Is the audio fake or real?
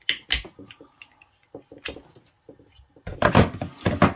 real